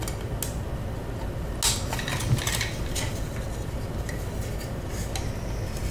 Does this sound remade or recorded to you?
recorded